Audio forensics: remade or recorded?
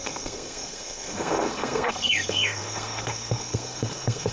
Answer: remade